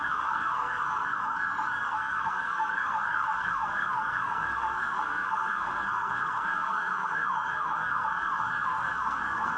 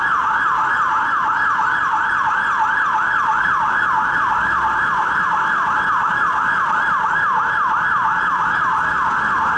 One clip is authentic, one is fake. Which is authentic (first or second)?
second